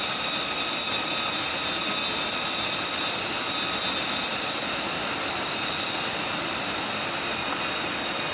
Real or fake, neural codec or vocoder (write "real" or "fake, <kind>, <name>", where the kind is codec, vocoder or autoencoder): real